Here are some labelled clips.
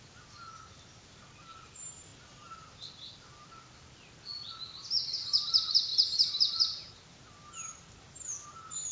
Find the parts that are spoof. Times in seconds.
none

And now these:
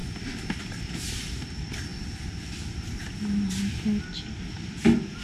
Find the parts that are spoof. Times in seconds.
none